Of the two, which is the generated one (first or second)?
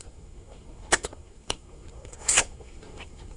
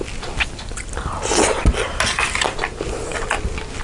first